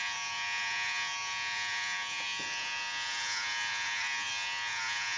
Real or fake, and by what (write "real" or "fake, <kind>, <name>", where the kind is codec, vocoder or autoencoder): fake, vocoder, Vocos